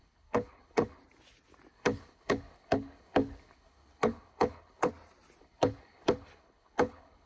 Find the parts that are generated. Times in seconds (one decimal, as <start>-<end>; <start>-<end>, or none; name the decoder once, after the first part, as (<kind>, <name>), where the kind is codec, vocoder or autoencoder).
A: 0.0-1.0 (codec, HILCodec); 1.7-4.9; 5.4-7.3